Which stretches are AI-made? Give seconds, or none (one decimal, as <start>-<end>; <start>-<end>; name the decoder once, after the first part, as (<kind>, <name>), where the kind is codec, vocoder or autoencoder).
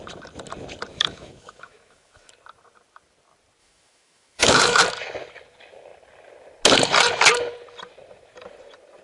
0.9-2.3 (autoencoder, DAC-VAE); 3.6-4.8